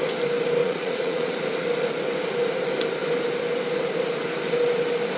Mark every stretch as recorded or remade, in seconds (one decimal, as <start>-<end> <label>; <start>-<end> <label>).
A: 0.0-0.6 recorded; 0.6-1.3 remade; 1.3-5.2 recorded